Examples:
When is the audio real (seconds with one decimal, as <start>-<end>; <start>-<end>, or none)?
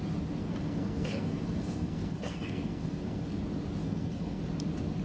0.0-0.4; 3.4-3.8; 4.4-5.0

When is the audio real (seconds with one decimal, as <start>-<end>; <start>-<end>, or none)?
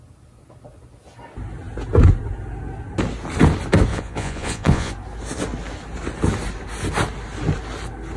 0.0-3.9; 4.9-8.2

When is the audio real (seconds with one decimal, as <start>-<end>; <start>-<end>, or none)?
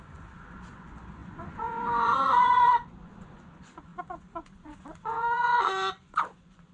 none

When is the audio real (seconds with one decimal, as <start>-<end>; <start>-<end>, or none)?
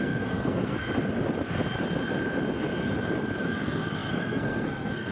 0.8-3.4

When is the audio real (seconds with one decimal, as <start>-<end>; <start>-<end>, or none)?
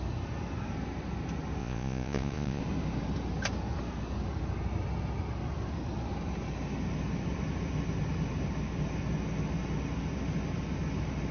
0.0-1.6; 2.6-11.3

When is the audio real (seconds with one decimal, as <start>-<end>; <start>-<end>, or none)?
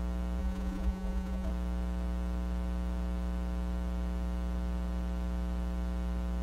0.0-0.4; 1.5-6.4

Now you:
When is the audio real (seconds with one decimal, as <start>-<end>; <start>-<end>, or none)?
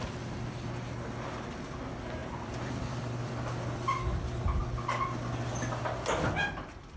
0.0-2.2; 3.3-7.0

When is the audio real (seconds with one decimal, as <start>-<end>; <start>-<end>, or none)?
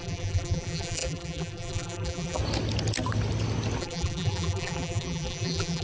2.4-3.8